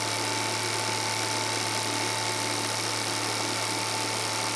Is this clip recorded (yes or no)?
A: yes